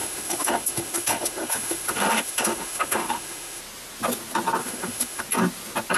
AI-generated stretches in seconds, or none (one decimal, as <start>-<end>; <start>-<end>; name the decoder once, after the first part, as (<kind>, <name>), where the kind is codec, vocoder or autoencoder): 0.0-3.6 (autoencoder, DAC-VAE); 4.6-5.2